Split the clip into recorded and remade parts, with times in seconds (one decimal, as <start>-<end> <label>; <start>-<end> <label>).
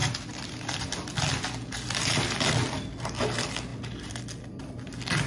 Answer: 0.0-5.3 recorded